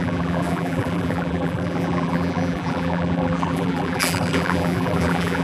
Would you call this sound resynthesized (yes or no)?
yes